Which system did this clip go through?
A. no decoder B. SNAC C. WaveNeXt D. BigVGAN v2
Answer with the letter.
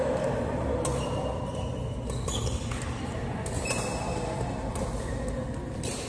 A